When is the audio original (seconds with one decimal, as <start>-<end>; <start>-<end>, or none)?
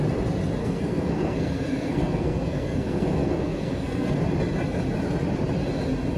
0.0-0.6; 4.2-6.2